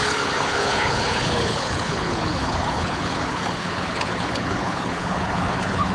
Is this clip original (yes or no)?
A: no